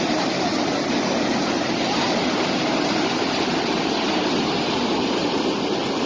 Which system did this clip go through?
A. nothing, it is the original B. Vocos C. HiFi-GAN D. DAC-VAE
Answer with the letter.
A